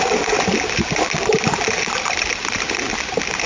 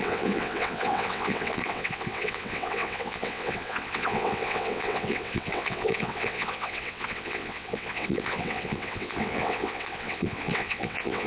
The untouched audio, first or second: first